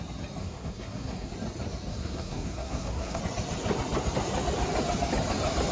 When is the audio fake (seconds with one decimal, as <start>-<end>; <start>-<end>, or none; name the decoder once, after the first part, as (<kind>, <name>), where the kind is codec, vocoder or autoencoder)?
0.4-1.3 (codec, SNAC); 1.9-3.2